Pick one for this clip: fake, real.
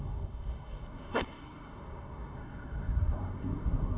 fake